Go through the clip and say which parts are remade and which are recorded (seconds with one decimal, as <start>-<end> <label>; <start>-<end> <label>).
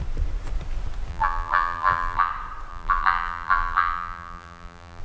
0.0-1.1 recorded; 1.1-2.3 remade; 2.3-2.7 recorded; 2.7-5.0 remade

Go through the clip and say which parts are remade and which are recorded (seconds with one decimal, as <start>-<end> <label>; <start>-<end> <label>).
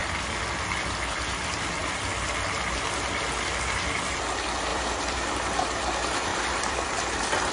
0.0-4.7 recorded; 4.7-5.3 remade; 5.3-6.3 recorded; 6.3-6.9 remade; 6.9-7.5 recorded